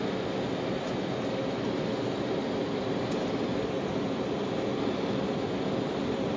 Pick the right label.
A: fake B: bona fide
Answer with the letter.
B